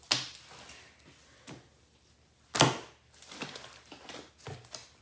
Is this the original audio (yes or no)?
yes